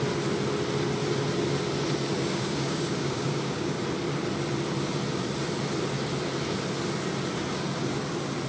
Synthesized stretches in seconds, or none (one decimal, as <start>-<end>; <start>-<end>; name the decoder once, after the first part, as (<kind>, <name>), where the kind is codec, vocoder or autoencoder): 2.1-3.8 (codec, DAC)